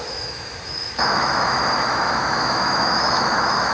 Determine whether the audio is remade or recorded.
remade